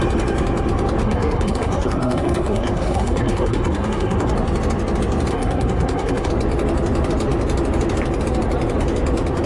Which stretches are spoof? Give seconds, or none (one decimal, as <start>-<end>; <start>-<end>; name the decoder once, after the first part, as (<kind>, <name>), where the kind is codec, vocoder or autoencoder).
1.0-4.3 (codec, SNAC); 5.3-6.3